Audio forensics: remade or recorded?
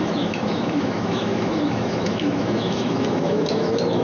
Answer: remade